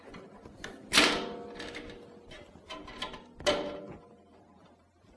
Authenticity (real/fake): real